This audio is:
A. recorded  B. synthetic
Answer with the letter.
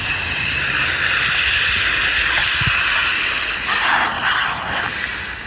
A